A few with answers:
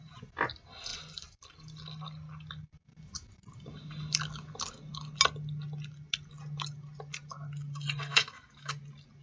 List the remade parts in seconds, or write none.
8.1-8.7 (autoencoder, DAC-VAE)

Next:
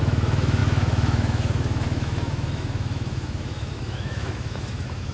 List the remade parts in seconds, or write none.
0.0-5.1 (autoencoder, DAC-VAE)